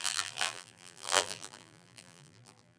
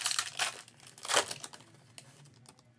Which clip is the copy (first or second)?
first